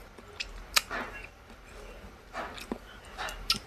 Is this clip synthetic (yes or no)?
no